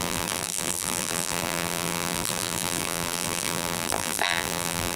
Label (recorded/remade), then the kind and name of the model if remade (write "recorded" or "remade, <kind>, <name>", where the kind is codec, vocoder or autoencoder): remade, vocoder, BigVGAN v2